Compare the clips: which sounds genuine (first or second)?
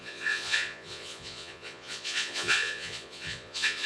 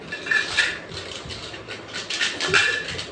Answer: second